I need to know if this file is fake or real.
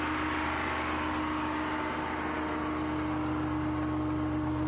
real